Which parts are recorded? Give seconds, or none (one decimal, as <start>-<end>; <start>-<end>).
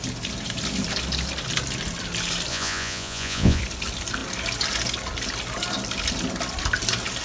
0.0-2.5; 3.6-7.2